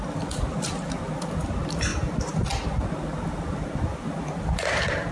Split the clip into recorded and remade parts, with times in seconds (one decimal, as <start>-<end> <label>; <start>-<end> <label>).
0.0-5.1 recorded